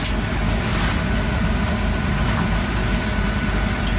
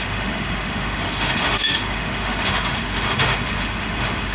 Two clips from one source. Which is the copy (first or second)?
second